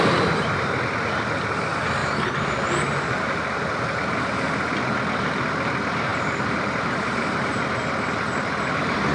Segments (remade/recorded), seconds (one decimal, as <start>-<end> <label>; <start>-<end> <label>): 0.0-2.0 recorded; 2.0-4.2 remade; 4.2-6.1 recorded; 6.1-7.6 remade; 7.6-9.1 recorded